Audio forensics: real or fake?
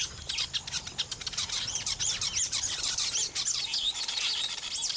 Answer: real